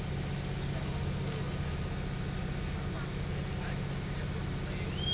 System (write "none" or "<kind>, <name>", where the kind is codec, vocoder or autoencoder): none